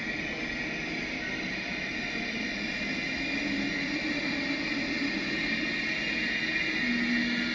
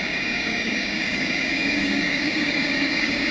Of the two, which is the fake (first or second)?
second